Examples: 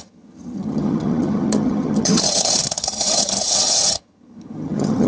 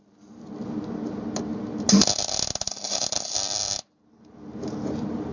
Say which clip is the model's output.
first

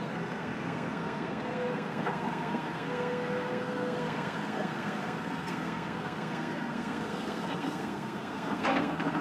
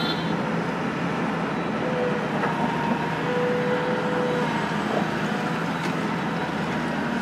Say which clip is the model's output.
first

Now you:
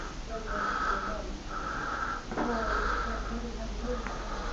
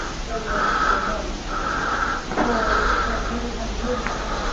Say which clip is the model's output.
second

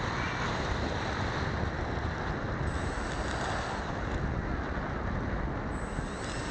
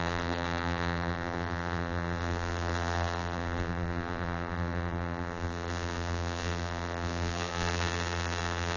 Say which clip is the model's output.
second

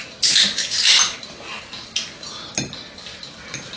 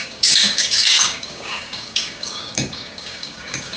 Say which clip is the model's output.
second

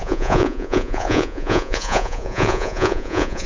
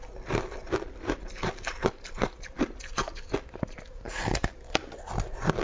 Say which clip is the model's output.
first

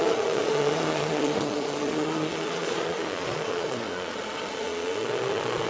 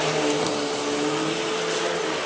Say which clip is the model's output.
first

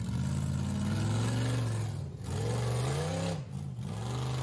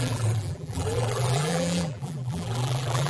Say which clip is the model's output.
second